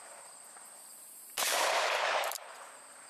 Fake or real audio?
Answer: fake